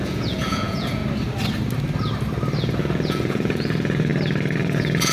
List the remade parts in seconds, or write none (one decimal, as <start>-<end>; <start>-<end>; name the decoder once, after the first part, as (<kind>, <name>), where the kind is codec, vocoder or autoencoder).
0.0-1.0 (vocoder, Vocos); 2.8-4.1; 4.6-5.1